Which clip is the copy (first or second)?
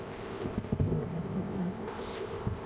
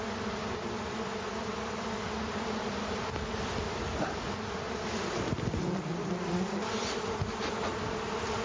first